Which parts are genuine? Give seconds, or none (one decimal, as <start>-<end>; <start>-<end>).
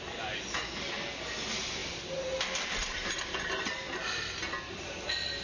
0.0-5.4